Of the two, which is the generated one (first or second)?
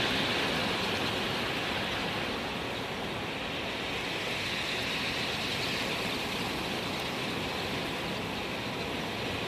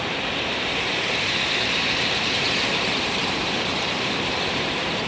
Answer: second